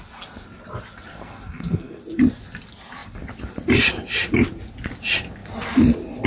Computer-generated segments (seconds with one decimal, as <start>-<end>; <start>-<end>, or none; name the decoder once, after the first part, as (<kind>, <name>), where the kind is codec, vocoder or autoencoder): 1.1-2.0 (codec, SNAC)